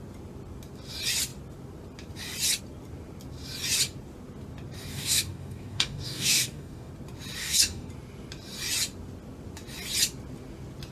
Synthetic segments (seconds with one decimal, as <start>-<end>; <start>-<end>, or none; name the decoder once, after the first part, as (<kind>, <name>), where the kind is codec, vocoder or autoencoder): 4.9-6.9 (codec, DAC); 7.4-7.9